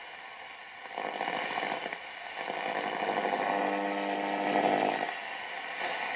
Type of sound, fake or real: real